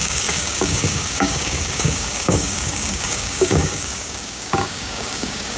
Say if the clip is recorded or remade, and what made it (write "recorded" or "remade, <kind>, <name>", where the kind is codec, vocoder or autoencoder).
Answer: remade, codec, DAC